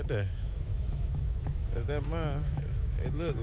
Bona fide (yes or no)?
no